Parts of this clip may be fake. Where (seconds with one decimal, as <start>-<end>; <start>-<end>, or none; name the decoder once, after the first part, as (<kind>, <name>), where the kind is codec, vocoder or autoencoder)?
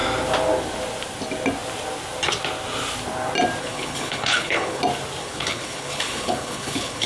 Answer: 3.6-4.8 (codec, HILCodec); 5.2-7.1